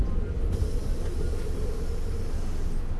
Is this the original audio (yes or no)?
yes